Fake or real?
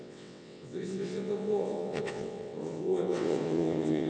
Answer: fake